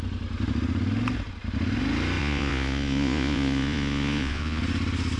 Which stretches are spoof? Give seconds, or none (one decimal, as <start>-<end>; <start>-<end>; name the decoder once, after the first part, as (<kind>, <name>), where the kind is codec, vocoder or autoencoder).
2.2-4.6 (vocoder, Vocos)